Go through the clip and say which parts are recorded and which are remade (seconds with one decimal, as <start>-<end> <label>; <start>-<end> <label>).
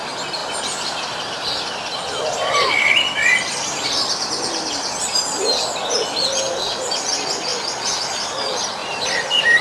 0.0-0.4 recorded; 0.4-4.7 remade; 4.7-8.8 recorded; 8.8-9.6 remade